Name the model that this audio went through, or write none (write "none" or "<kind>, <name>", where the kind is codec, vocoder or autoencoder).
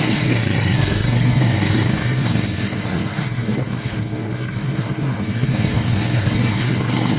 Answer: codec, SNAC